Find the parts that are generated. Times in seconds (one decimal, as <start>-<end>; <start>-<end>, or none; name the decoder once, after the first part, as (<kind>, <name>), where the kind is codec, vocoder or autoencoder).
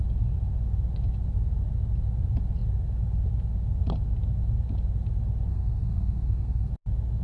5.5-6.7 (codec, SNAC)